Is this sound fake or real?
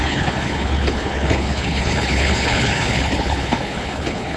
fake